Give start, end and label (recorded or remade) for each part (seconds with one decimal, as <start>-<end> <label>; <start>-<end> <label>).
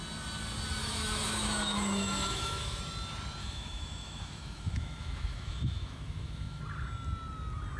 0.0-0.8 recorded; 0.8-2.8 remade; 2.8-3.4 recorded; 3.4-6.6 remade; 6.6-7.8 recorded